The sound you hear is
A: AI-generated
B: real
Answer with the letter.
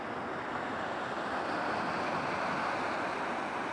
B